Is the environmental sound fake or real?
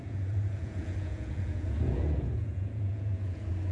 fake